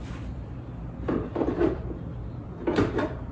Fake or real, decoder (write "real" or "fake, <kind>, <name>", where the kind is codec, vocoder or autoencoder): fake, vocoder, BigVGAN v2